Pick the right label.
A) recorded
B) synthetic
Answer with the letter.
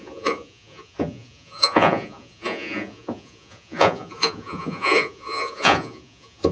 B